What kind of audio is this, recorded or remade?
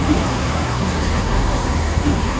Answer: remade